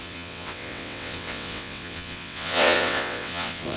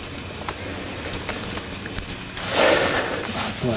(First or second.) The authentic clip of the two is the second